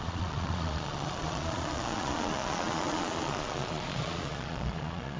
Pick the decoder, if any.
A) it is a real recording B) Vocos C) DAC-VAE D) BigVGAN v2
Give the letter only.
B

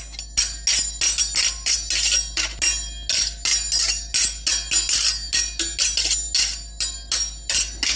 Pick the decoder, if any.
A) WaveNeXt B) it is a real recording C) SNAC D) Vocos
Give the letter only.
B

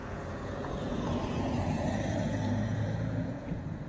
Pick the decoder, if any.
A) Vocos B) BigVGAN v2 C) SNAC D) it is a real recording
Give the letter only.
A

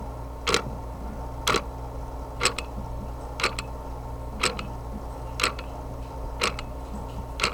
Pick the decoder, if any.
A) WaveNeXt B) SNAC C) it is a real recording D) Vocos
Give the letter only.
C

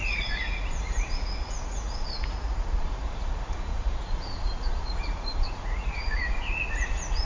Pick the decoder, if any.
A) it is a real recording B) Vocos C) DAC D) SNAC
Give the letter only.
B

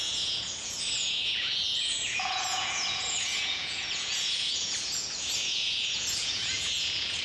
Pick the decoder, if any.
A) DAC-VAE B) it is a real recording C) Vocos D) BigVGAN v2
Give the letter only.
C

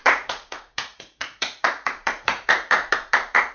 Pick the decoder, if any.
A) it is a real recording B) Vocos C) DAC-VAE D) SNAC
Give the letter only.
B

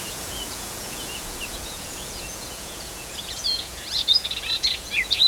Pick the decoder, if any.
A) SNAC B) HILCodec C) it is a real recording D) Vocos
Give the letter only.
D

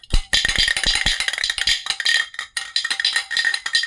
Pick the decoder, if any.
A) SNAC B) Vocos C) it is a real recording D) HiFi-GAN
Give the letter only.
C